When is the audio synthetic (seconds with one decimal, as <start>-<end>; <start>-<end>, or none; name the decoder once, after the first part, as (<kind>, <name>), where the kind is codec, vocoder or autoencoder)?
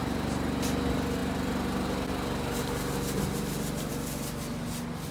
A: none